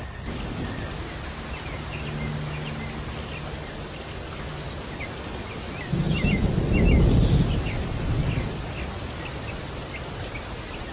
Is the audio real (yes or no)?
yes